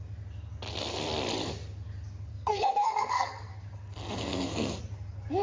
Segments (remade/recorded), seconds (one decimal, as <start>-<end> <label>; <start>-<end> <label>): 0.0-2.3 recorded; 2.3-3.5 remade; 3.5-4.2 recorded; 4.2-4.8 remade; 4.8-5.4 recorded